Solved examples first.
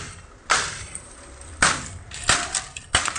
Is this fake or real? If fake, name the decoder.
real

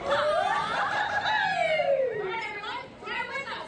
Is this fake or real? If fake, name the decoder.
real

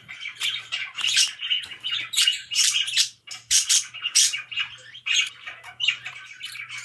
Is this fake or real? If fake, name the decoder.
fake, vocoder, BigVGAN v2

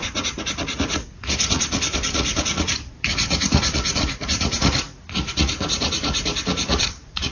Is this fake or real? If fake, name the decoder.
fake, vocoder, Vocos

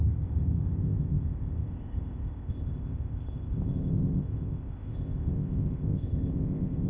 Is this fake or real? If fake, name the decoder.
fake, codec, ZipCodec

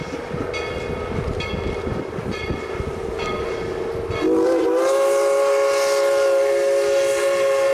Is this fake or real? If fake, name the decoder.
real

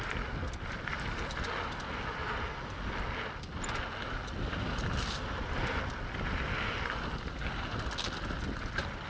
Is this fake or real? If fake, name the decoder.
real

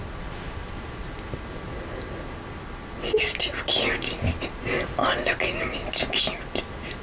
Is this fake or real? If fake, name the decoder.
real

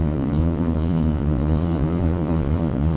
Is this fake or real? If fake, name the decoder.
fake, vocoder, Vocos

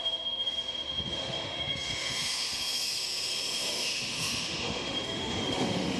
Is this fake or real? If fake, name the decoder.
fake, autoencoder, DAC-VAE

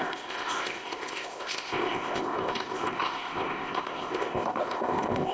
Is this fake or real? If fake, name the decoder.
fake, codec, ZipCodec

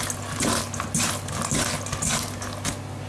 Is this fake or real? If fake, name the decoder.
real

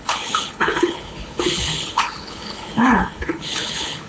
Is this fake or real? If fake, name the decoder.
fake, codec, HILCodec